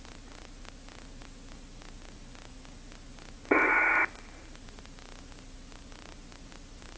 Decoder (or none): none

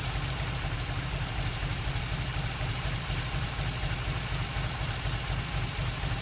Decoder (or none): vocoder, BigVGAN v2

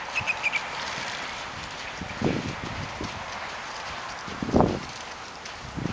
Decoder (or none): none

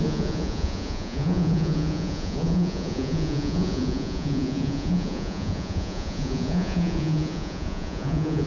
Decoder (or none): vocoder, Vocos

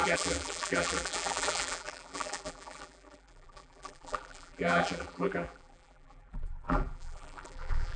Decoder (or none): vocoder, BigVGAN v2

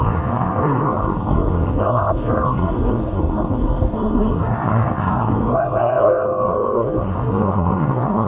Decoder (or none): codec, SNAC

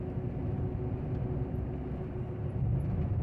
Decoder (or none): none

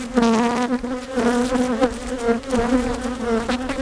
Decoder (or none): none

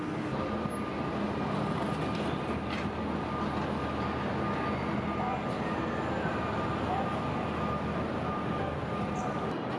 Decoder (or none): none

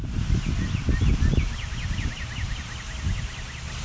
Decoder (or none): none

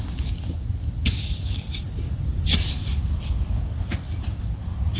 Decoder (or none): none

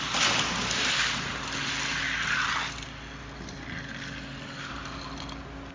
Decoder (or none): none